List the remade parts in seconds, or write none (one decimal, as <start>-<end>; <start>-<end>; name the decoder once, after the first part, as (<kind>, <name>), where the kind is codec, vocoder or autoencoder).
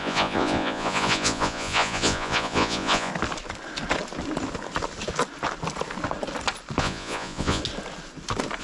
0.0-3.1 (vocoder, Vocos); 6.8-7.6